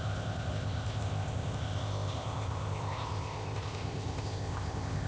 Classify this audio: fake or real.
fake